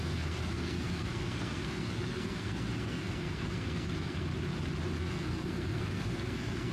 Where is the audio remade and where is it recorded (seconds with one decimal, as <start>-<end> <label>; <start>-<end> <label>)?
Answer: 0.0-4.3 remade; 4.3-5.0 recorded; 5.0-6.7 remade